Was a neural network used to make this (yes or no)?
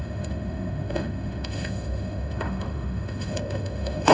yes